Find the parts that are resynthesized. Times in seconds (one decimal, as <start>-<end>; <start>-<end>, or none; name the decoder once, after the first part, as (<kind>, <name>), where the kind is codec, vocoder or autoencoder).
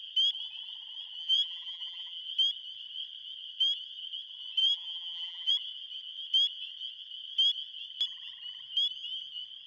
1.2-2.2 (vocoder, BigVGAN v2); 4.6-5.5